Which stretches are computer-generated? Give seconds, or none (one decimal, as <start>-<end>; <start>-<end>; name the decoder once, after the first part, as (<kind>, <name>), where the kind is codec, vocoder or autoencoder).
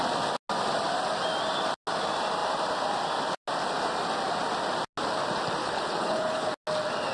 5.6-6.5 (codec, HILCodec)